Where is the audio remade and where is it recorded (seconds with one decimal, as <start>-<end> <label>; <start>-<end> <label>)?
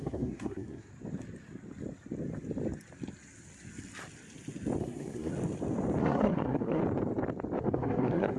0.0-0.9 remade; 0.9-4.8 recorded; 4.8-5.3 remade; 5.3-6.0 recorded; 6.0-6.8 remade; 6.8-7.6 recorded; 7.6-8.4 remade